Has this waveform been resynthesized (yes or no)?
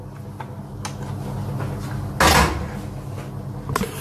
no